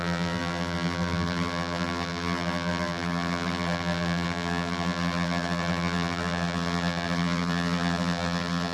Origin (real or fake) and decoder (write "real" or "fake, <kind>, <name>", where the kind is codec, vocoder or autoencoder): fake, vocoder, BigVGAN v2